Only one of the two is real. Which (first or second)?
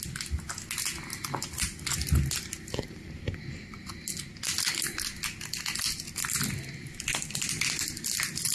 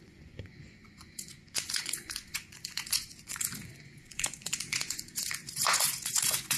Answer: first